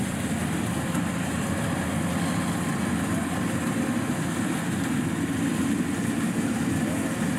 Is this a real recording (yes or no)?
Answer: yes